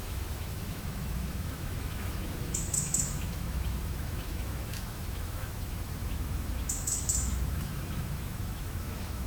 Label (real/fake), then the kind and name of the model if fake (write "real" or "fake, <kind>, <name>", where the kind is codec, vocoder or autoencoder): fake, autoencoder, DAC-VAE